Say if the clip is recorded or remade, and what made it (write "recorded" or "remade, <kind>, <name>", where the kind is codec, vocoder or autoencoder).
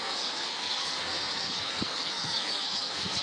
remade, codec, SNAC